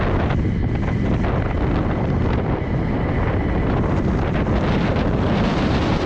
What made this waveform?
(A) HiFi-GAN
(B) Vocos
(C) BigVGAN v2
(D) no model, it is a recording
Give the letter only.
D